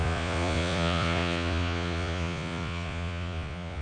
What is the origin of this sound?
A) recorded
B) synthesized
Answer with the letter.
B